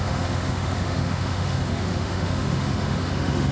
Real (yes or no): no